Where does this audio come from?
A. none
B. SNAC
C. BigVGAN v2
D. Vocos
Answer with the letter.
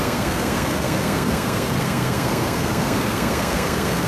B